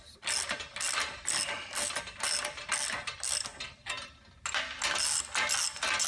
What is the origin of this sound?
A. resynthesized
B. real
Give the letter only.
B